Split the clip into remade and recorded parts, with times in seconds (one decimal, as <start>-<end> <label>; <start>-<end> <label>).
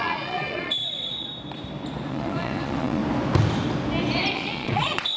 0.0-1.3 remade; 1.3-2.1 recorded; 2.1-3.0 remade; 3.0-4.3 recorded; 4.3-5.2 remade